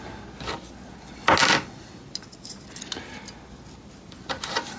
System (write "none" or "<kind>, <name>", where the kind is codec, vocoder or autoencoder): none